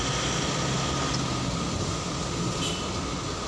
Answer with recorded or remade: recorded